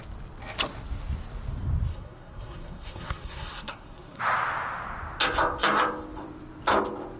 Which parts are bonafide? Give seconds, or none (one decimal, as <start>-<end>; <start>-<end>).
0.0-1.9; 4.2-7.2